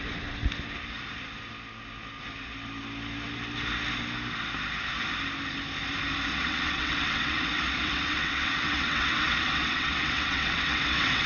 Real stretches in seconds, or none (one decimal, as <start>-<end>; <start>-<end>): 0.0-6.3

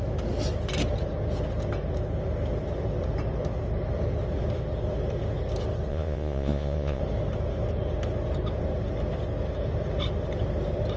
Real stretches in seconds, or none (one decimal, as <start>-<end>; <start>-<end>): 0.0-5.9; 7.0-11.0

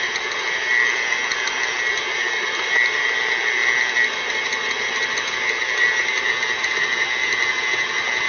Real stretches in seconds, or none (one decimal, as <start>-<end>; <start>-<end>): 0.0-8.3

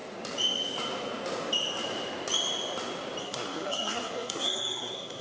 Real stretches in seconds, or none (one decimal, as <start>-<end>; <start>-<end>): 0.0-3.2

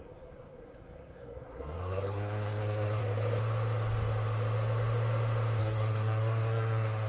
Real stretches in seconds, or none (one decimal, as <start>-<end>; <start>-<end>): 3.0-5.6

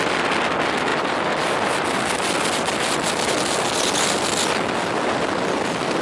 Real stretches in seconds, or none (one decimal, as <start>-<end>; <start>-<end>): 0.0-6.0